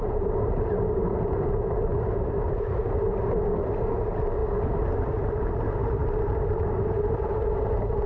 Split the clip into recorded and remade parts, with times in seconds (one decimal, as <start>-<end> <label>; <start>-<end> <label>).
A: 0.0-3.0 remade; 3.0-6.0 recorded; 6.0-8.1 remade